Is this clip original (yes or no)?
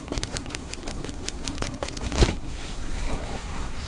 no